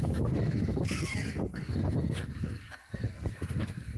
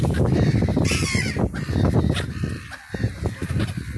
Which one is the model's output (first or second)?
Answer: first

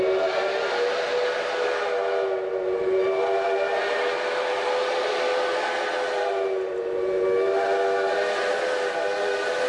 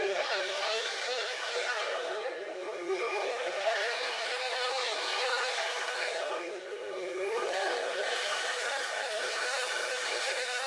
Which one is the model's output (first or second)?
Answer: second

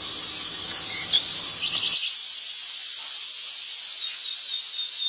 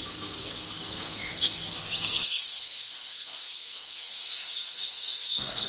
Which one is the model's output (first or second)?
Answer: second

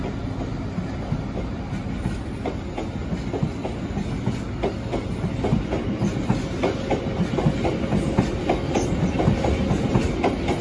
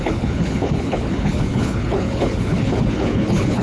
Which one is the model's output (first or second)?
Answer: second